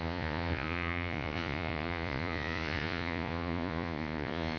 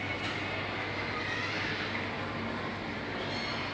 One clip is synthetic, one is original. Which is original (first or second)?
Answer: second